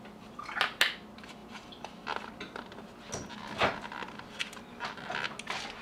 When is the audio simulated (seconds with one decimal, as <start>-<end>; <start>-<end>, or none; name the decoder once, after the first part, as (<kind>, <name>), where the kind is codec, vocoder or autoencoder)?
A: none